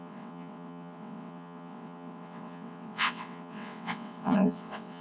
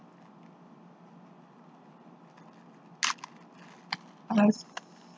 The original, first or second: second